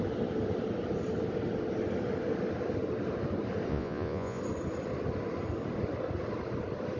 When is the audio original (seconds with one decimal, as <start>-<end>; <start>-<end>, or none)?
0.0-3.7; 4.4-7.0